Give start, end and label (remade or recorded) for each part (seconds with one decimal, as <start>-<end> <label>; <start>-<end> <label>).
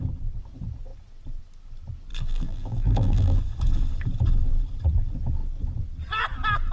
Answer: 0.0-2.1 recorded; 2.1-3.4 remade; 3.4-6.7 recorded